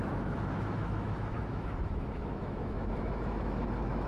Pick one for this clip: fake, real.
fake